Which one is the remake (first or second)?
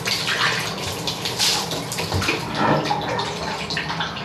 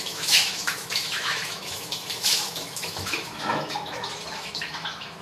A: second